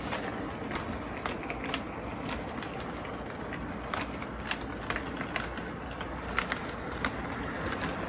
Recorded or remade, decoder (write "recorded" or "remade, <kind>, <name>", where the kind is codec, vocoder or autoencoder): recorded